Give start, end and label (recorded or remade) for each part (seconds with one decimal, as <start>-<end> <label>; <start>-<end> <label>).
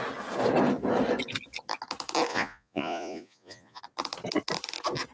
0.0-2.3 recorded; 2.3-3.8 remade; 3.8-5.1 recorded